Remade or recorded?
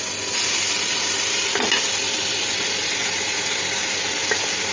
recorded